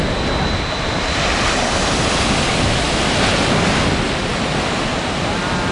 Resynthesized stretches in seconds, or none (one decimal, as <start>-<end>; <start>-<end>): none